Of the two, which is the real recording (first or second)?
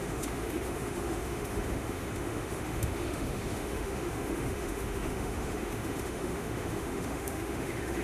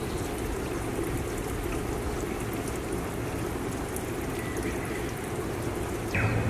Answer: second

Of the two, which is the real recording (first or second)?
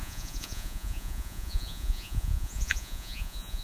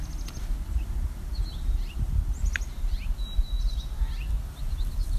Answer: second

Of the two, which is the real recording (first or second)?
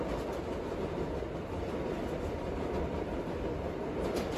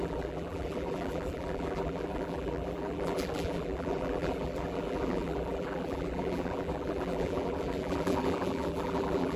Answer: first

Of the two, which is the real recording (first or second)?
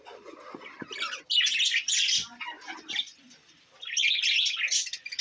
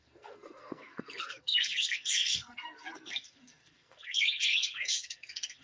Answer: first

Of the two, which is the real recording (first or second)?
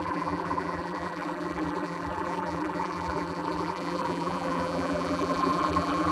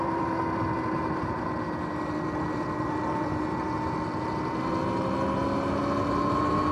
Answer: second